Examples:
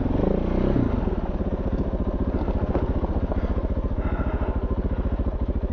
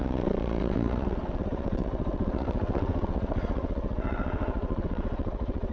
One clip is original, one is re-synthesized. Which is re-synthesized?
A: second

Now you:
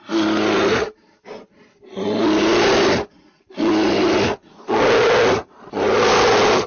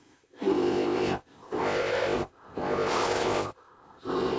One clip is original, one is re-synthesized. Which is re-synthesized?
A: second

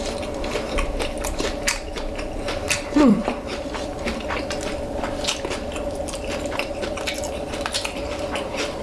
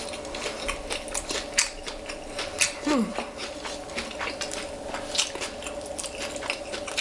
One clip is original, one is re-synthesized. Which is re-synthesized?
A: first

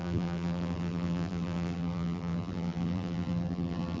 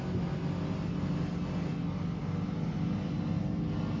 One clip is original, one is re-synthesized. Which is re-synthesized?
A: first